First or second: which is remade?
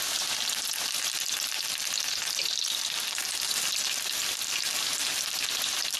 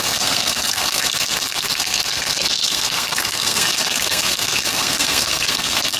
second